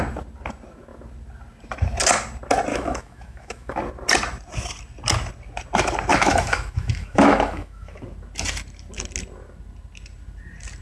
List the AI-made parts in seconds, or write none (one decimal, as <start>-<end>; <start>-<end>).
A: 2.7-3.8; 6.1-8.0